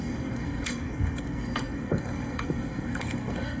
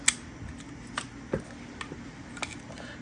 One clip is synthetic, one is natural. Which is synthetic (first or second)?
first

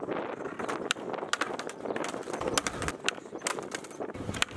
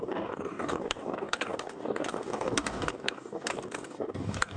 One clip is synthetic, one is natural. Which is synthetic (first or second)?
second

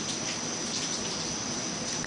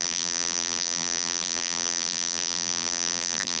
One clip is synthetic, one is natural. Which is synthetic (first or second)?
second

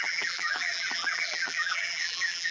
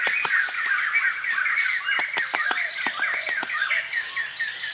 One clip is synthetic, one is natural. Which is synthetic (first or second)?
first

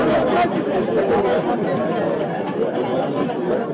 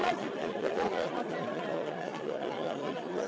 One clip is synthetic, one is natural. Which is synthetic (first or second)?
second